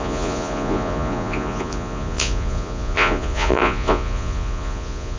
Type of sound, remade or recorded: remade